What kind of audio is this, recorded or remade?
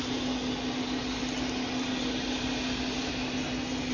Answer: recorded